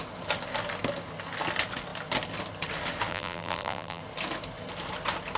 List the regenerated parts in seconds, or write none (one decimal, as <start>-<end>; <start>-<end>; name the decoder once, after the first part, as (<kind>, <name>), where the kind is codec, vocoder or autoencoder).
3.1-4.0 (vocoder, BigVGAN v2)